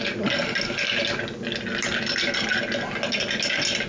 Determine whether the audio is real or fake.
real